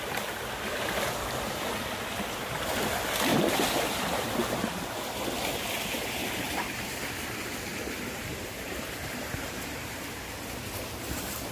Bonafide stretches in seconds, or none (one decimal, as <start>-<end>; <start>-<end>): 0.0-3.3; 4.8-6.2; 6.9-7.7; 10.3-11.5